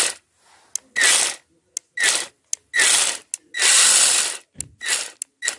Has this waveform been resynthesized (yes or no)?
no